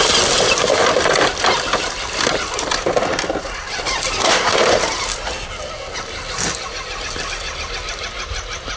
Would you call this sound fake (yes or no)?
no